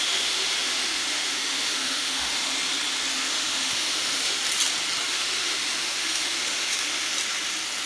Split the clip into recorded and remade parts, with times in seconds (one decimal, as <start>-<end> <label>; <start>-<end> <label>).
0.0-2.5 remade; 2.5-3.1 recorded; 3.1-4.4 remade; 4.4-5.1 recorded; 5.1-7.1 remade; 7.1-7.9 recorded